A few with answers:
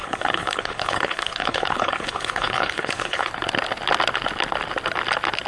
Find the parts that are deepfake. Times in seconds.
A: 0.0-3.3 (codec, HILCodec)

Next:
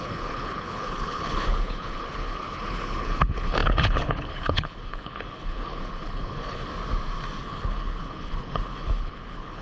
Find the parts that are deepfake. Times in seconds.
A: 0.0-6.7 (codec, HILCodec); 7.4-9.6

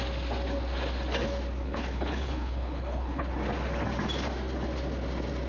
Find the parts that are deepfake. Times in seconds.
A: 1.6-3.3 (codec, HILCodec)

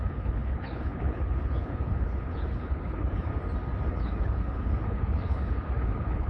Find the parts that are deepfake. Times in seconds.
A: 0.0-3.3 (codec, HILCodec); 3.9-6.3

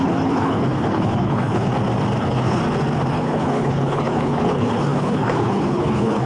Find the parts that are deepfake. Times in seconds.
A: 0.0-1.7 (codec, HILCodec); 2.2-2.6; 3.1-6.3

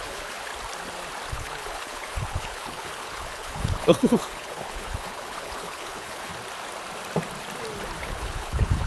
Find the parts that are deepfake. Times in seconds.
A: 0.0-0.5 (codec, HILCodec); 1.3-6.3; 8.0-8.9